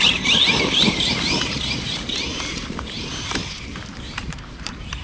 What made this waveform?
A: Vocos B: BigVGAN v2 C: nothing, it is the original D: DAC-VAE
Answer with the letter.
B